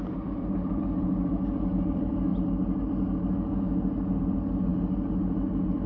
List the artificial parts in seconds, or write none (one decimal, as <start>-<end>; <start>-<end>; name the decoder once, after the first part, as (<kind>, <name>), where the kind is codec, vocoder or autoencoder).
0.0-2.3 (vocoder, BigVGAN v2); 4.2-4.7